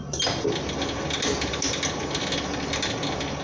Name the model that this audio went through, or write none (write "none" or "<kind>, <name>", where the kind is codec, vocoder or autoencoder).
none